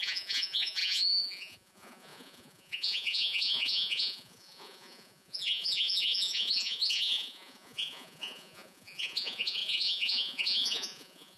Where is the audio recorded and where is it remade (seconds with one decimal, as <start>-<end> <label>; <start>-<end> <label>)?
0.0-11.4 remade